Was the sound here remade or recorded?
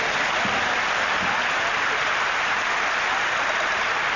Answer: recorded